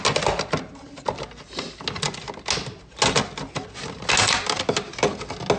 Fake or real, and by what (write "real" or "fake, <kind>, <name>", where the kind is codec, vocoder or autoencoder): real